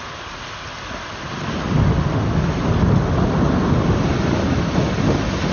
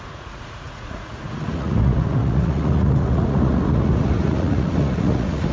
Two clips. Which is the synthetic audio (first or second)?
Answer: second